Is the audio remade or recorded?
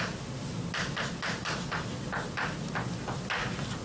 recorded